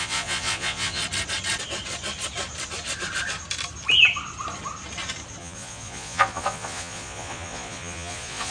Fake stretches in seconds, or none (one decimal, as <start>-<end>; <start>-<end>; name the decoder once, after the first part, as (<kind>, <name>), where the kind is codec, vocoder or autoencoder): 0.0-1.0 (vocoder, Vocos); 5.4-8.5